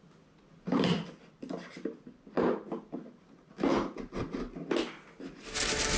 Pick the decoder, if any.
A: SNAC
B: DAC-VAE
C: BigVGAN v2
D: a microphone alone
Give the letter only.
D